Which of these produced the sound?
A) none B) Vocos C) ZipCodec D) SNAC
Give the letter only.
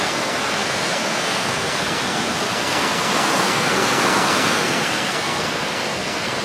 D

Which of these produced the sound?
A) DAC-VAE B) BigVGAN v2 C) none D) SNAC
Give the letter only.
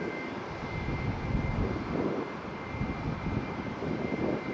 C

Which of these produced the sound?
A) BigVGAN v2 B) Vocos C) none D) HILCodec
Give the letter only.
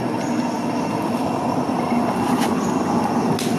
C